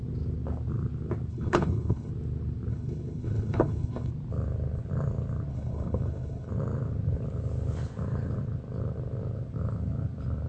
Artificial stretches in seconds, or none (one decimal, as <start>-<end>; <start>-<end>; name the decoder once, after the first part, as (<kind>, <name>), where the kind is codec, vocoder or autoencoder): 1.3-2.1 (codec, HILCodec); 2.7-4.1; 5.5-6.5